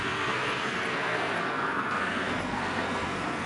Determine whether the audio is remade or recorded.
remade